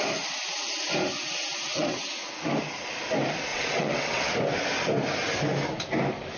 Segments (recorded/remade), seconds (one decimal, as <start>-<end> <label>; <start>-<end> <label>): 0.0-1.7 recorded; 1.7-2.3 remade; 2.3-3.5 recorded; 3.5-4.3 remade; 4.3-6.4 recorded